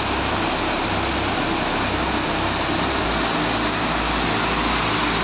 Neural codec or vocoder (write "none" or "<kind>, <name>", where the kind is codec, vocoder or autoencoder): none